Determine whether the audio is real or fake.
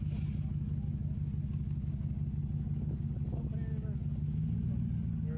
real